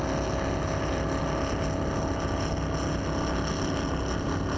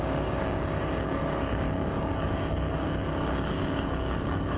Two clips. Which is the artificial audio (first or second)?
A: second